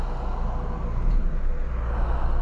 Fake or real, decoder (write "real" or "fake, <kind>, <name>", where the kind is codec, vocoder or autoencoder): real